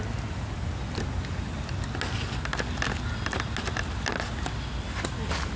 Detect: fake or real real